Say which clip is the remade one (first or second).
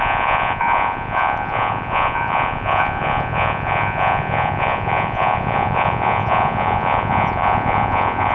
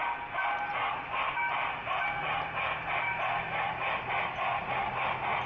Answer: first